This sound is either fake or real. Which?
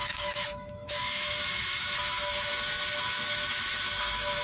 fake